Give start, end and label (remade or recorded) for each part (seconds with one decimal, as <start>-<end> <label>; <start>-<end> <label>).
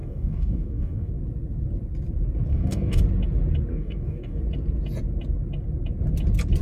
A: 0.0-1.1 remade; 1.1-2.5 recorded; 2.5-3.0 remade; 3.0-3.7 recorded; 3.7-4.4 remade; 4.4-6.6 recorded